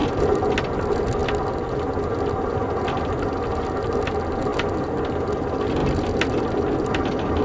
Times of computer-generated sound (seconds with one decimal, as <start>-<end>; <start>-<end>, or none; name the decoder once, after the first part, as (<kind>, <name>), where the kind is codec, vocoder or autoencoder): none